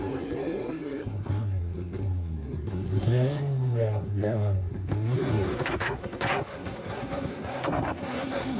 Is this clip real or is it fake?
fake